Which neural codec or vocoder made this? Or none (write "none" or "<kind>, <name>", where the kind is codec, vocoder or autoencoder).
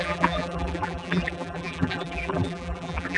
vocoder, BigVGAN v2